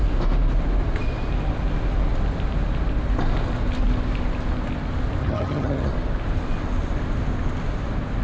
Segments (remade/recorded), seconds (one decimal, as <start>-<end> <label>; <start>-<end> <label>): 0.0-5.2 recorded; 5.2-5.9 remade; 5.9-8.2 recorded